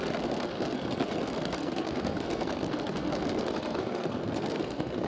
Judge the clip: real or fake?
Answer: fake